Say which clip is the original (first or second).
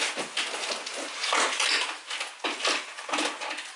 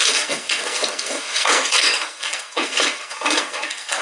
first